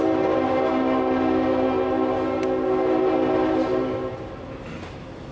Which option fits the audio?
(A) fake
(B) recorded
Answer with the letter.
B